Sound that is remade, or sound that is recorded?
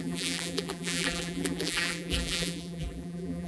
remade